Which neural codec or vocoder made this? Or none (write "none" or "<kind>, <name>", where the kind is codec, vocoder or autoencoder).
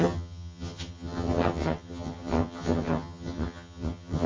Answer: vocoder, HiFi-GAN